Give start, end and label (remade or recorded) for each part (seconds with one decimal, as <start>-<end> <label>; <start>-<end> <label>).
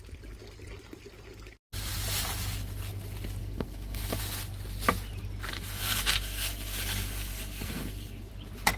0.0-3.4 recorded; 3.4-4.2 remade; 4.2-5.5 recorded; 5.5-8.3 remade; 8.3-8.8 recorded